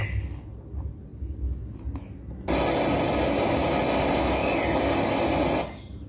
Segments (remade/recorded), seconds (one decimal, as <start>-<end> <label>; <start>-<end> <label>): 0.0-6.1 recorded